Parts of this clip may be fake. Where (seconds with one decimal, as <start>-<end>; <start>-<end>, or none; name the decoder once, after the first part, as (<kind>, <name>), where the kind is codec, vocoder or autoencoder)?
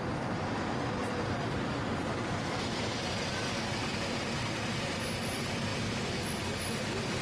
none